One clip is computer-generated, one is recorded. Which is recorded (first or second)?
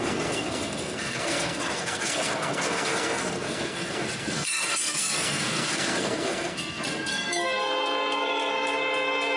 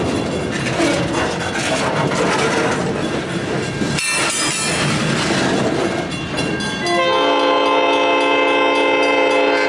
second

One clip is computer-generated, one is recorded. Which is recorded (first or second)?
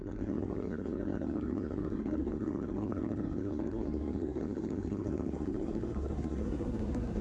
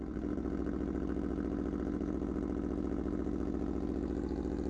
second